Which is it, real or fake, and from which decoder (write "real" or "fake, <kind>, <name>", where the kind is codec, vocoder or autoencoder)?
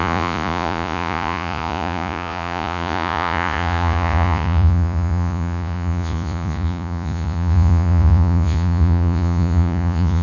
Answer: fake, vocoder, Vocos